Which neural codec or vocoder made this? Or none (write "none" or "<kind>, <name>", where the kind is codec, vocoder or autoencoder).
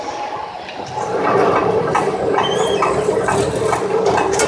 vocoder, BigVGAN v2